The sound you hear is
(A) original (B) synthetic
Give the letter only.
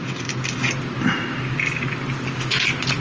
A